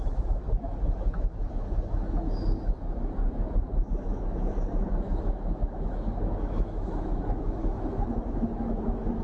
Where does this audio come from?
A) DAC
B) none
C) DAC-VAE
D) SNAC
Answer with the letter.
C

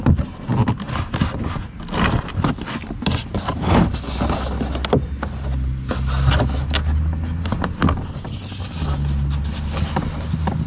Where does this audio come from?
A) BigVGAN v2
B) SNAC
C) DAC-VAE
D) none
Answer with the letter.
D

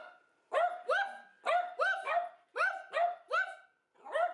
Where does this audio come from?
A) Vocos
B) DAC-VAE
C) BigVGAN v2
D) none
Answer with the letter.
D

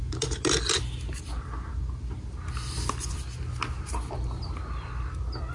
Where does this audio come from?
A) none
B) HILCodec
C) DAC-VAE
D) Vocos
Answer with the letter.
A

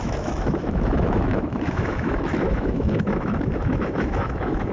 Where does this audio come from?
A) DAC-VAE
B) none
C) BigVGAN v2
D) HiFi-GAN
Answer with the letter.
A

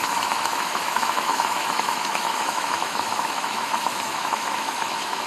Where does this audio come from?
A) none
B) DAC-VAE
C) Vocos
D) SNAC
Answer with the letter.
B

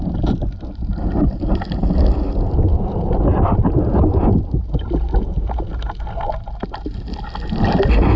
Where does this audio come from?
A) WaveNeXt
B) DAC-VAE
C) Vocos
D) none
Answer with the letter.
D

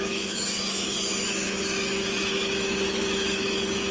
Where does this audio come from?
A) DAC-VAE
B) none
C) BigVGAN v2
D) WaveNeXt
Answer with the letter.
A